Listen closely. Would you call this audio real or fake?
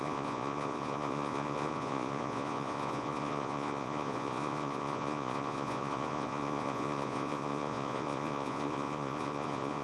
fake